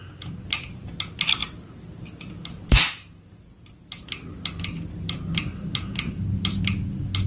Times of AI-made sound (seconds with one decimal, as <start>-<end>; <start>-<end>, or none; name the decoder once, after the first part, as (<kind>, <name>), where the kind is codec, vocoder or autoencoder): none